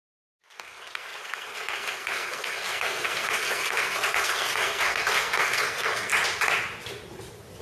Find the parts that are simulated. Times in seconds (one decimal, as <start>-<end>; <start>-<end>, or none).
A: 0.0-6.1